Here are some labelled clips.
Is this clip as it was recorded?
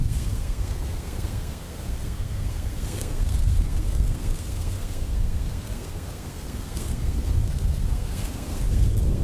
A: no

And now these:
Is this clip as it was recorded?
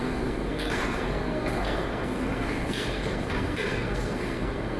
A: no